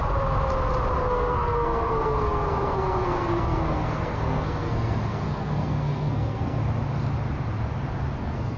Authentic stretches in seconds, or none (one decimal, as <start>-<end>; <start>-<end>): 0.0-1.0; 6.6-8.2